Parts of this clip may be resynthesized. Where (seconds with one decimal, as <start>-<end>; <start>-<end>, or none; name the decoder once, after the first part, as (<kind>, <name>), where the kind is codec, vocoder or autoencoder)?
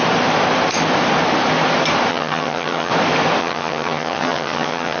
2.1-2.9 (vocoder, HiFi-GAN); 3.4-5.0